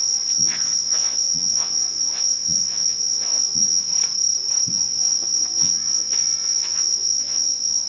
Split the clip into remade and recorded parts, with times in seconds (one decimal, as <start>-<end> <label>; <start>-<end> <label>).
0.0-3.9 remade; 3.9-4.7 recorded; 4.7-7.9 remade